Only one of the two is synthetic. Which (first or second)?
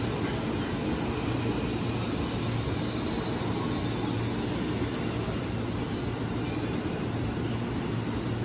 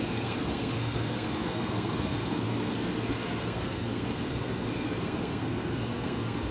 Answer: second